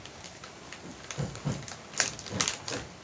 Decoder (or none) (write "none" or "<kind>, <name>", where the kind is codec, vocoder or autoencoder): none